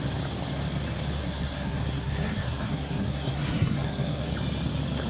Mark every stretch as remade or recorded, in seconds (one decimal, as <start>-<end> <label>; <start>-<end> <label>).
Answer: 0.0-1.2 recorded; 1.2-4.3 remade; 4.3-5.1 recorded